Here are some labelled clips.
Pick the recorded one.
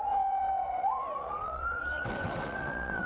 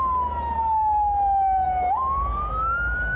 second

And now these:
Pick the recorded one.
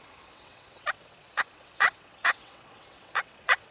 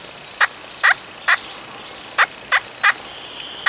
second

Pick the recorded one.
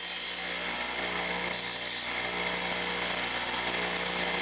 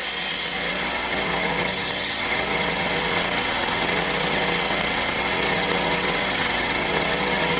first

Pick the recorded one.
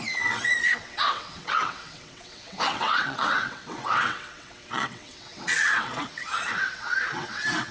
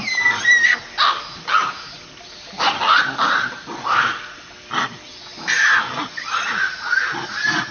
second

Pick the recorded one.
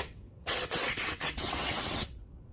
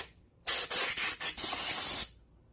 second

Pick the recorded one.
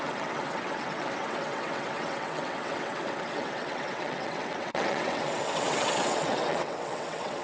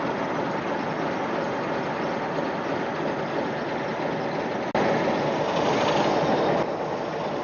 second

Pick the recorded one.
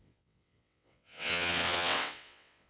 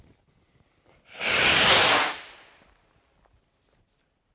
second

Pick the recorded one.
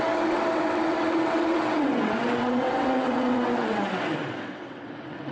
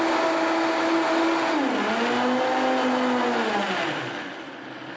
second